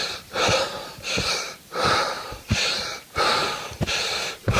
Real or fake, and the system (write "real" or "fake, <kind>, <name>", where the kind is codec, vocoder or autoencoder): fake, vocoder, BigVGAN v2